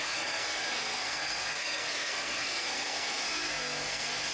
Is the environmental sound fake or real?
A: fake